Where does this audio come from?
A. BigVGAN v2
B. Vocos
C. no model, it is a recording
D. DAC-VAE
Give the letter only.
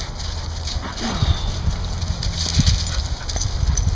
C